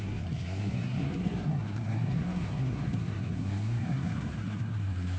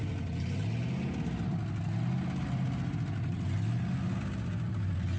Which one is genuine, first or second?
second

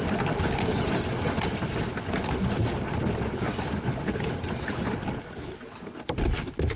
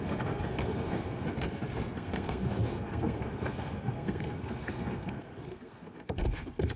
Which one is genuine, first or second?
first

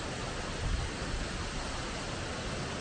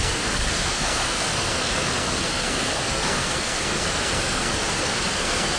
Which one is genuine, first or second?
first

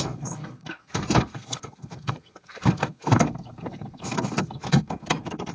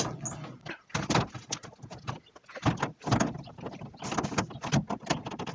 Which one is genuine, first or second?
second